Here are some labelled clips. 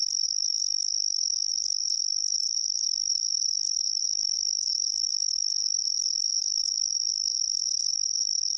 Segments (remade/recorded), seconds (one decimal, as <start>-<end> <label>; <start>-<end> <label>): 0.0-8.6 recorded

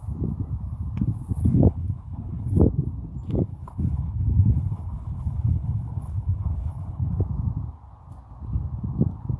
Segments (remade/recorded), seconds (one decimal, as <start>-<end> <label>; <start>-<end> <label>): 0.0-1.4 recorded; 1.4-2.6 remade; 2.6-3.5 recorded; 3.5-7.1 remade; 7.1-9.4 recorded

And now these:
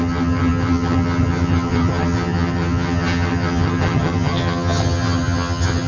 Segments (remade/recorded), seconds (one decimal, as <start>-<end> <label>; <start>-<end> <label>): 0.0-5.9 remade